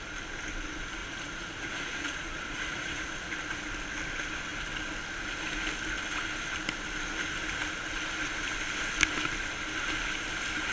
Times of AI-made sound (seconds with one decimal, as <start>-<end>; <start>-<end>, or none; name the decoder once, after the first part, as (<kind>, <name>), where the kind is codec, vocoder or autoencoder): 1.0-3.3 (vocoder, Vocos)

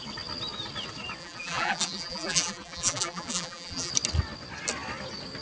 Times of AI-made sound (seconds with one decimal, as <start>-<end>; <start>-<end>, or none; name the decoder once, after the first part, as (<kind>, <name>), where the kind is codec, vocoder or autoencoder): 1.2-3.9 (vocoder, BigVGAN v2)

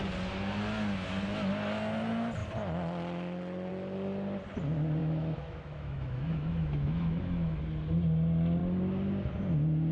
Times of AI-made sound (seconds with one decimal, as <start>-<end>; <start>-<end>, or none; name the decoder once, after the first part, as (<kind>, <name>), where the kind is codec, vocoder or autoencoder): 5.0-7.6 (autoencoder, DAC-VAE)

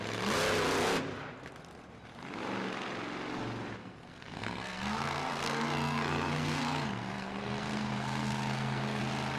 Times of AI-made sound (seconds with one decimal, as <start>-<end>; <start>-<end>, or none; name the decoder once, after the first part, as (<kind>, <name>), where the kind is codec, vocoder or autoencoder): 3.8-9.0 (codec, SNAC)

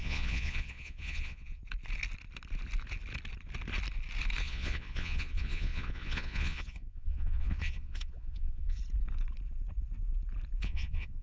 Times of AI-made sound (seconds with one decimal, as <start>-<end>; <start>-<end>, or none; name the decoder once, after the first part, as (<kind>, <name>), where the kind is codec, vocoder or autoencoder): 0.0-1.6 (vocoder, Vocos); 4.4-8.8; 10.6-11.2

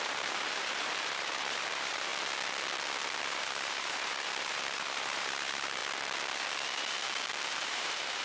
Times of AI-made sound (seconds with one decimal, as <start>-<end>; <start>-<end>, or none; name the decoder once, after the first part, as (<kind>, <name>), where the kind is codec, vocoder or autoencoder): 0.0-2.1 (vocoder, BigVGAN v2); 3.2-5.8; 7.5-8.2